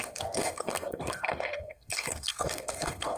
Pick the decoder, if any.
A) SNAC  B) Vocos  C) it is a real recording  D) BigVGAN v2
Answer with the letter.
A